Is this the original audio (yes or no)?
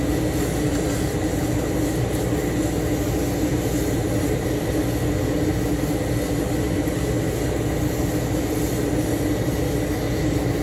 yes